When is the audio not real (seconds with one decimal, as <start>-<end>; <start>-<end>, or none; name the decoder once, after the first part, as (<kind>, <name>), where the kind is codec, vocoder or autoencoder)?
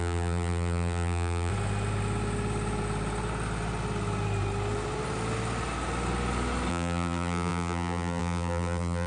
0.0-1.5 (vocoder, BigVGAN v2); 6.7-9.1